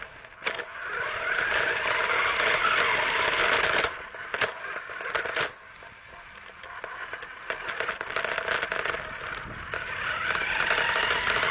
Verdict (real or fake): real